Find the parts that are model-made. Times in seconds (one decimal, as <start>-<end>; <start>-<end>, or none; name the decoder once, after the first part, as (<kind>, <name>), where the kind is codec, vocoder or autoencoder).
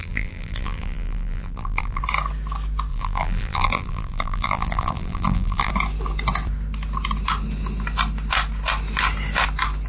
0.0-2.0 (vocoder, BigVGAN v2); 2.9-5.7